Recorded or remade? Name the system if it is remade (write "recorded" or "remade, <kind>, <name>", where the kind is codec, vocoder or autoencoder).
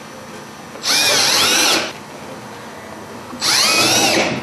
recorded